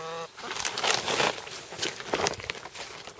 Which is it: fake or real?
real